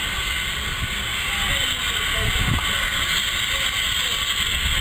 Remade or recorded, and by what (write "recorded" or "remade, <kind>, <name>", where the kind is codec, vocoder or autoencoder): recorded